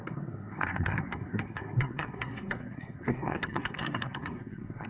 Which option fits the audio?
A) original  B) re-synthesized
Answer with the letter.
B